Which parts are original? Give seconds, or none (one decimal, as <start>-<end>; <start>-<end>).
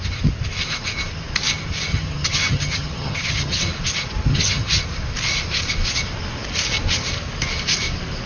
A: 0.0-1.9; 3.6-4.3; 4.8-8.3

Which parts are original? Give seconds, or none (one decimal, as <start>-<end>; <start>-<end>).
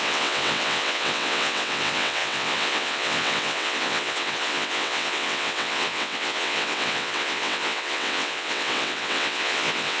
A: none